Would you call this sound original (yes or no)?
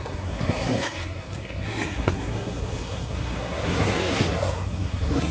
no